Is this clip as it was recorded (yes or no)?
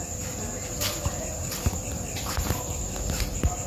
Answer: yes